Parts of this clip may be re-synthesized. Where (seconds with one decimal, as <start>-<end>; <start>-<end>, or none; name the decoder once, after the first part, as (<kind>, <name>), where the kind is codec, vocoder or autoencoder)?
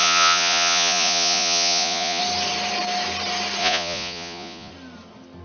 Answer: 0.0-2.2 (vocoder, Vocos); 3.6-4.7